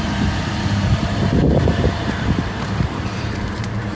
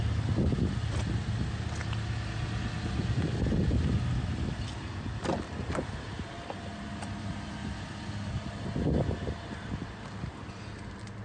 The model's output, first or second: first